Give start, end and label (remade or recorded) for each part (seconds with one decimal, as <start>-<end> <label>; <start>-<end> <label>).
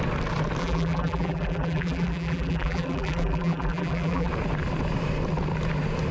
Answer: 0.0-0.6 recorded; 0.6-4.3 remade; 4.3-6.1 recorded